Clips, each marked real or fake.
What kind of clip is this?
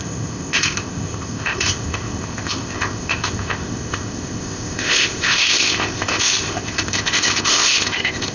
fake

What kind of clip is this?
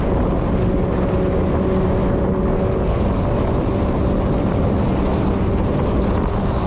real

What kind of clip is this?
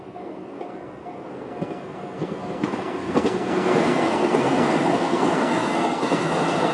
fake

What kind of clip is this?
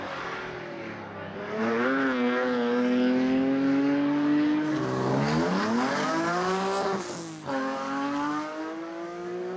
fake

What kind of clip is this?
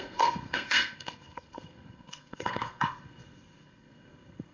fake